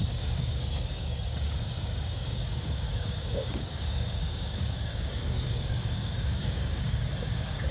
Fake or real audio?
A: fake